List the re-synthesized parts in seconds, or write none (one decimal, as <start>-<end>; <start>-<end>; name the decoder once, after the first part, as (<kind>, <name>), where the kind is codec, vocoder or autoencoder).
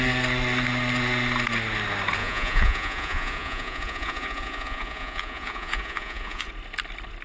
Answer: 2.2-6.5 (vocoder, Vocos)